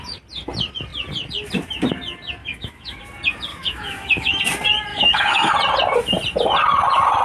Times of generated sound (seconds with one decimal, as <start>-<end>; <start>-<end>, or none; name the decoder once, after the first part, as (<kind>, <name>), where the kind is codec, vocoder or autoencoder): 2.4-3.0 (autoencoder, DAC-VAE); 3.5-4.4; 4.9-5.5